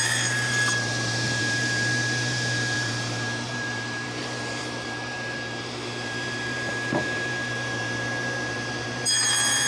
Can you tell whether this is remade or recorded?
remade